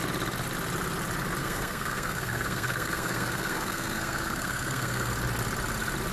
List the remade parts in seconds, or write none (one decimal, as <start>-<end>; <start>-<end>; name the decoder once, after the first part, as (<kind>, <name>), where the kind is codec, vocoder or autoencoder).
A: 1.4-5.1 (codec, SNAC)